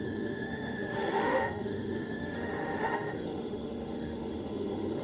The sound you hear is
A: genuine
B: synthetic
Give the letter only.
B